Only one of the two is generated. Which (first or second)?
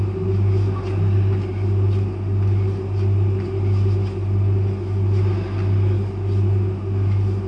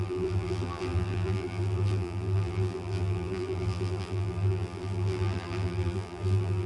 second